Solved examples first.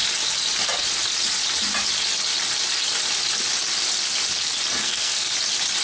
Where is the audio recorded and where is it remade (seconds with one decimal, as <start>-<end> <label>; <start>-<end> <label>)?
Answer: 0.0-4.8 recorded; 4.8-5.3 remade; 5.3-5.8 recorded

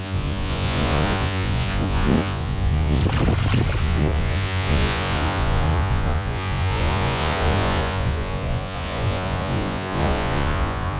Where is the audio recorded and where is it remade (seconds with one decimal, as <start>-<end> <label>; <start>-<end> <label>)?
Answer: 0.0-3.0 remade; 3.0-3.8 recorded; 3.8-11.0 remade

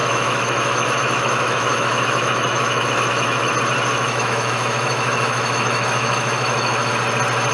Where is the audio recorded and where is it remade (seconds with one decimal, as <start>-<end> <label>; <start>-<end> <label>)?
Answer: 0.0-3.5 remade; 3.5-3.9 recorded; 3.9-6.9 remade; 6.9-7.5 recorded

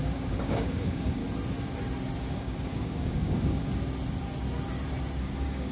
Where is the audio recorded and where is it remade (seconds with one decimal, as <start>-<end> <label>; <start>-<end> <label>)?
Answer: 0.0-1.2 remade; 1.2-2.2 recorded; 2.2-3.7 remade; 3.7-5.2 recorded; 5.2-5.7 remade